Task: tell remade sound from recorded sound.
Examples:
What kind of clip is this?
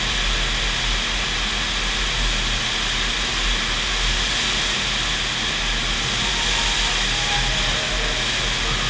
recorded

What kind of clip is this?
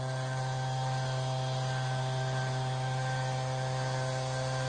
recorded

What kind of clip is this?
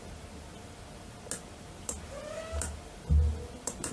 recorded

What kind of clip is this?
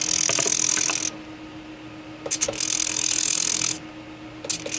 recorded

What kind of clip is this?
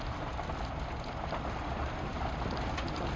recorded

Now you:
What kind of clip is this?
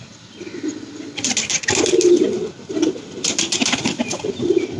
recorded